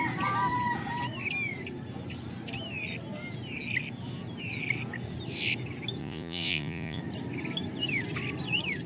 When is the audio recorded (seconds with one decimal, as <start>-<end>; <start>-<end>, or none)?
0.0-6.0; 7.0-8.9